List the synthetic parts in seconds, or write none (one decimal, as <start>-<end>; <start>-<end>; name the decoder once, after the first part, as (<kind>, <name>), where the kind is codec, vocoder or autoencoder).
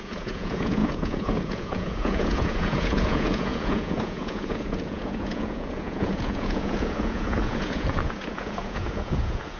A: 0.0-9.6 (vocoder, Vocos)